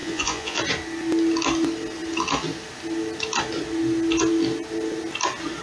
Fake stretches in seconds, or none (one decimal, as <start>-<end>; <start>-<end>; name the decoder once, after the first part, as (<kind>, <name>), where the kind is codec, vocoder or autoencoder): 0.0-0.6 (vocoder, Vocos)